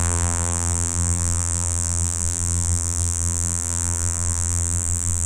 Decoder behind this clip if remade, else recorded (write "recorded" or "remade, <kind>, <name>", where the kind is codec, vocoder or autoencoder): remade, vocoder, BigVGAN v2